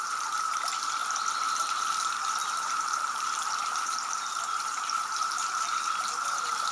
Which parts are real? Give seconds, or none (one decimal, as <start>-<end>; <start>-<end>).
1.0-1.6